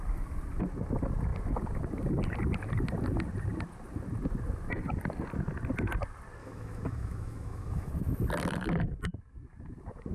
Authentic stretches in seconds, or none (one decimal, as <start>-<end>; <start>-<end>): 0.0-6.4; 7.9-10.1